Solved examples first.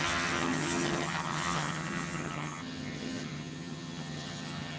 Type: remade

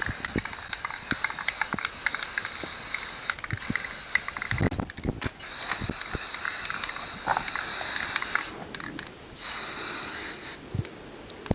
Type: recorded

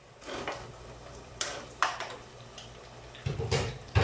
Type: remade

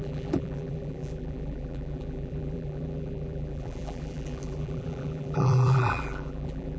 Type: remade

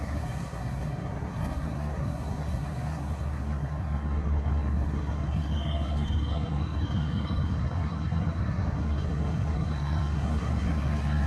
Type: remade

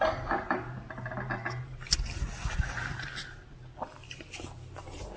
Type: recorded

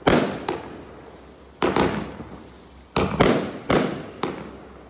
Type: recorded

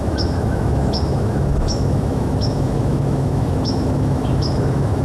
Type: remade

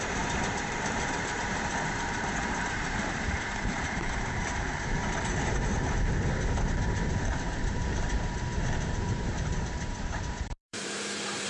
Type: remade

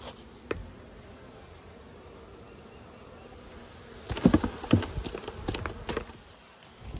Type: recorded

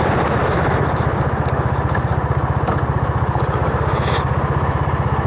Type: recorded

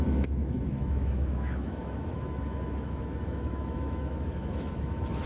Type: remade